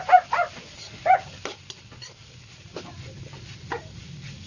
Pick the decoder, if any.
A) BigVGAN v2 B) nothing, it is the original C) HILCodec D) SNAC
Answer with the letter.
B